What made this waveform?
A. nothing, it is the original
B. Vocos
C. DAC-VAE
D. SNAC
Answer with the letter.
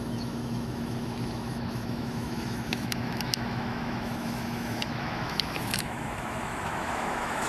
C